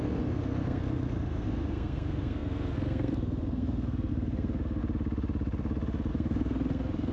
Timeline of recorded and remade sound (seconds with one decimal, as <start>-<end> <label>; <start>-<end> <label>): 0.0-4.8 remade; 4.8-6.1 recorded; 6.1-7.1 remade

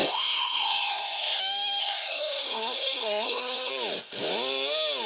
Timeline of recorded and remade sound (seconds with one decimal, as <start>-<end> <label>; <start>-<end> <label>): 0.0-1.4 remade; 1.4-1.8 recorded; 1.8-3.7 remade; 3.7-5.1 recorded

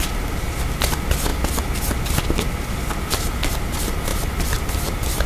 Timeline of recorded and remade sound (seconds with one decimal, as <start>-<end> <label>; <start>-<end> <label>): 0.0-5.3 recorded

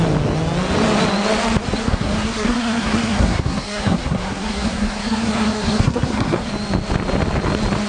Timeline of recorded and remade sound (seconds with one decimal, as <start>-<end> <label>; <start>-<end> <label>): 0.0-1.8 recorded; 1.8-6.5 remade; 6.5-7.9 recorded

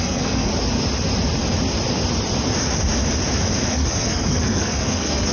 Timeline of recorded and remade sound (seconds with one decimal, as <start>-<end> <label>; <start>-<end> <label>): 0.0-0.5 remade; 0.5-3.7 recorded; 3.7-5.3 remade